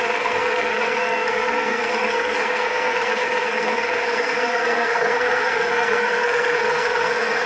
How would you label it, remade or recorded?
remade